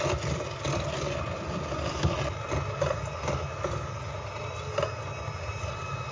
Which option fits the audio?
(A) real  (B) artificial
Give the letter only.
A